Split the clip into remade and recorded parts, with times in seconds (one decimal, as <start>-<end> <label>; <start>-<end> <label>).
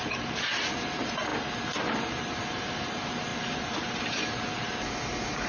0.0-5.5 remade